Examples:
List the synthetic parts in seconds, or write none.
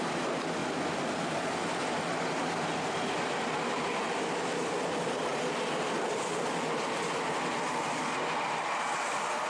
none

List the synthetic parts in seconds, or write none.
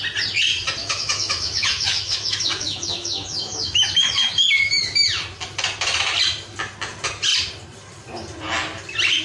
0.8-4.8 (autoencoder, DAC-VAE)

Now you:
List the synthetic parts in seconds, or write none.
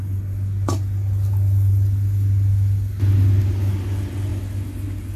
none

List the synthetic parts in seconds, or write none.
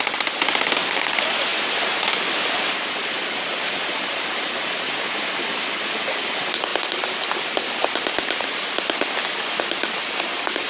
none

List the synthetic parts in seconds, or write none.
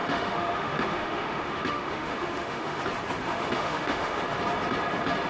0.0-2.8 (autoencoder, DAC-VAE); 3.2-4.2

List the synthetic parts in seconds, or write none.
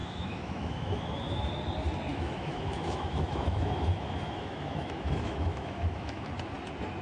0.0-1.5 (autoencoder, DAC-VAE); 2.1-6.3